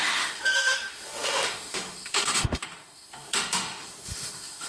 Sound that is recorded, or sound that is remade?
remade